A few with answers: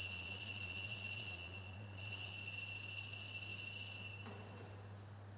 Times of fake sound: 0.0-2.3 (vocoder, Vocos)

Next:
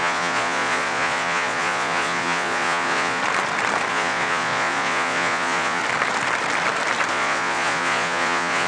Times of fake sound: 0.0-3.2 (vocoder, Vocos); 3.9-5.8; 7.1-8.7

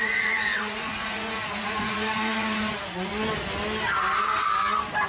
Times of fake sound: 0.0-3.1 (vocoder, Vocos)

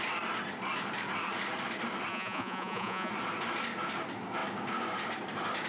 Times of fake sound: 2.1-3.1 (vocoder, Vocos)

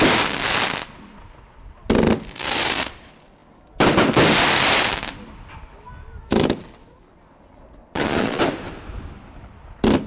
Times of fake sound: 7.8-8.4 (vocoder, Vocos)

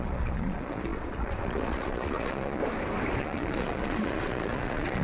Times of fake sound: 0.0-2.6 (vocoder, Vocos); 3.2-5.0

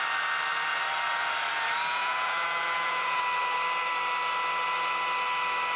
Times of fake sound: 1.9-3.2 (vocoder, Vocos)

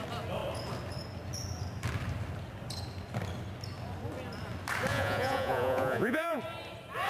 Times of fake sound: 4.9-6.4 (vocoder, Vocos)